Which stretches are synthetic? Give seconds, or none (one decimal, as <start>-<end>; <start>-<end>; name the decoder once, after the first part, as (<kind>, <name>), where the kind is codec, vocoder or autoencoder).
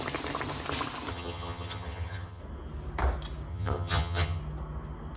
1.1-2.4 (vocoder, HiFi-GAN); 3.5-4.4